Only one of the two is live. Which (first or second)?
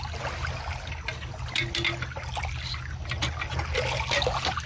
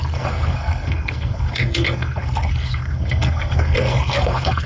first